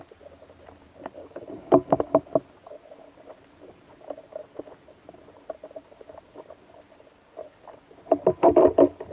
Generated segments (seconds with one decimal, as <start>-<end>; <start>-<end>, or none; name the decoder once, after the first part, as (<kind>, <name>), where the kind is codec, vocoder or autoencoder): 1.2-2.2 (codec, DAC)